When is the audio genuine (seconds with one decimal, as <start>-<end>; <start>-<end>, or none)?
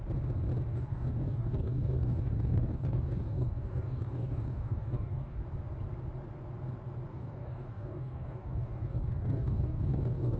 0.0-0.7; 5.4-7.1